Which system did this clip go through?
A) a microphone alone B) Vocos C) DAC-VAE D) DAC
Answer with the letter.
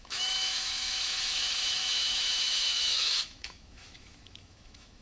C